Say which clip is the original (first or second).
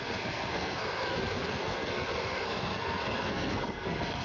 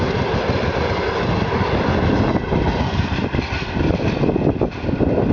second